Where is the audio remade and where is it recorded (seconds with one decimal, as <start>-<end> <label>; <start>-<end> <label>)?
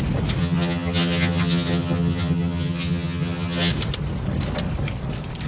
0.0-0.4 recorded; 0.4-3.7 remade; 3.7-5.5 recorded